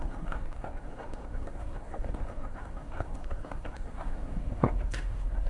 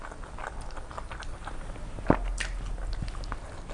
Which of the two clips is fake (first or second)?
first